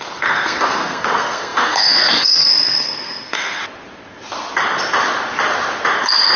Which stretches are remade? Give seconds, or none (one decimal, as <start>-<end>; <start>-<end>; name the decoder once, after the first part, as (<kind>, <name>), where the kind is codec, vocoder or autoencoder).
0.0-3.6 (codec, SNAC)